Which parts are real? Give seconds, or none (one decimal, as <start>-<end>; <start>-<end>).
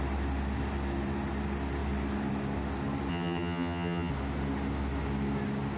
0.0-3.1; 4.1-5.8